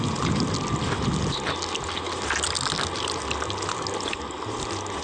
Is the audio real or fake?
real